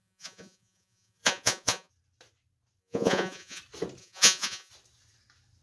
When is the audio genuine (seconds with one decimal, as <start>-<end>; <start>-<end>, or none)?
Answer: 1.9-2.8; 3.6-4.0; 4.7-5.6